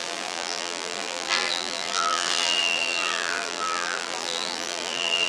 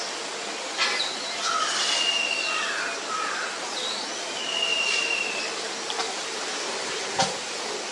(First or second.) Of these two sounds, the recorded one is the second